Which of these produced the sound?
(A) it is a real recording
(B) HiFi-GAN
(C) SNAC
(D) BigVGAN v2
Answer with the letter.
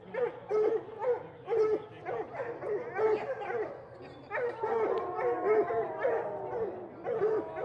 A